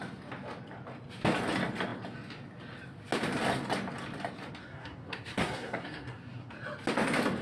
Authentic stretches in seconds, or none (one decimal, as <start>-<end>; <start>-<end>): 0.0-4.6; 6.5-7.4